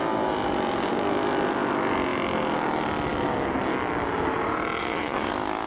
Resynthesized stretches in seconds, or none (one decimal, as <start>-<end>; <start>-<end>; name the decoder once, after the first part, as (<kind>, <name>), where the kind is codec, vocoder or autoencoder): 4.8-5.3 (vocoder, Vocos)